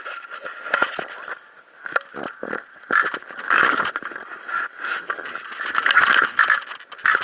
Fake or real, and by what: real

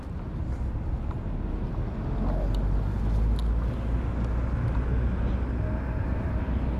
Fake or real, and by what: real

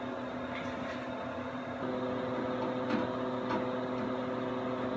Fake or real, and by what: real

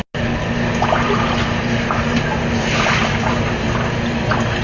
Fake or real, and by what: real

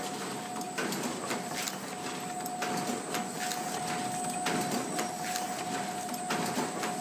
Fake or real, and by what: real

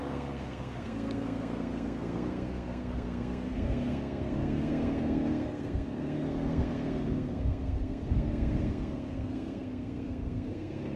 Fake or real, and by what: fake, codec, SNAC